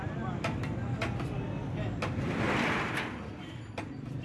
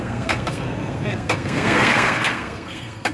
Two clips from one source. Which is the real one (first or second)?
first